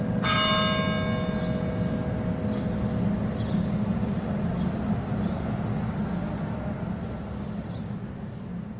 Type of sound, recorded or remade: recorded